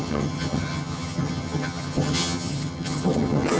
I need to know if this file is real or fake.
fake